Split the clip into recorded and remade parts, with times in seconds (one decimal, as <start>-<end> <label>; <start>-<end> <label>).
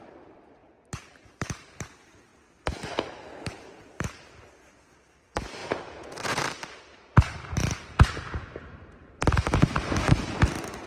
0.0-5.6 recorded; 5.6-6.4 remade; 6.4-10.9 recorded